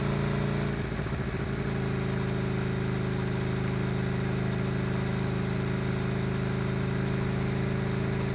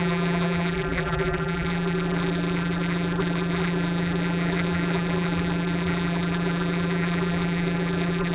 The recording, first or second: first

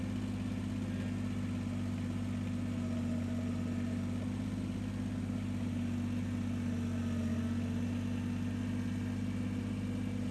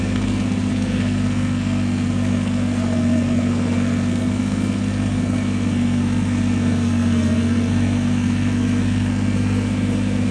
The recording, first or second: first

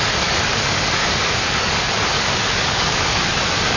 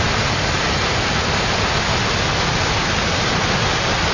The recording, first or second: second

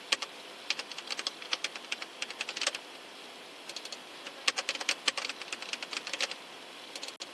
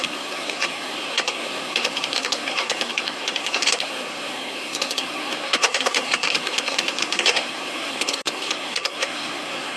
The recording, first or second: first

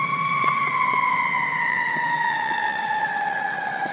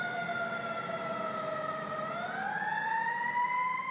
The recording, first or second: second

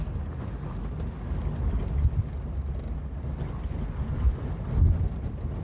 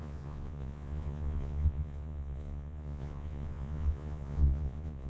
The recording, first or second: first